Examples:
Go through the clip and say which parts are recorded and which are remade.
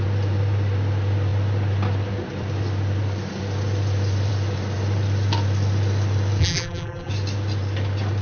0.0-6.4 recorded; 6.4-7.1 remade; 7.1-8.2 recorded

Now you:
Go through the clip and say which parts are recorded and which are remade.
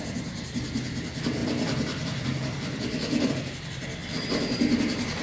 0.0-1.4 recorded; 1.4-3.3 remade; 3.3-4.0 recorded; 4.0-5.2 remade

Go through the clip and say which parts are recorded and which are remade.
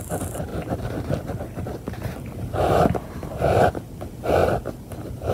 0.0-5.3 recorded